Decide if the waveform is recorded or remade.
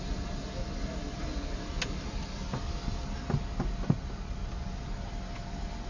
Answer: recorded